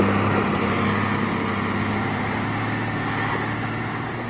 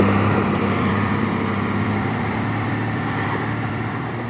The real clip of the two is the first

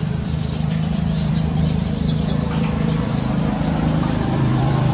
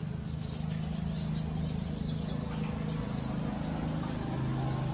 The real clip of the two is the second